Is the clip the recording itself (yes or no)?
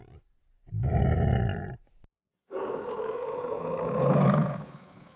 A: yes